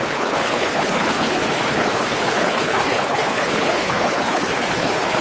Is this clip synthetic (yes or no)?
yes